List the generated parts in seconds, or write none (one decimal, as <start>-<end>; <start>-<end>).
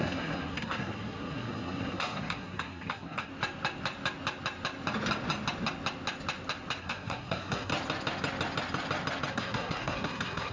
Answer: 0.0-3.3; 6.8-7.7; 9.3-10.5